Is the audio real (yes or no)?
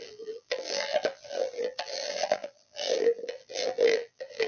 no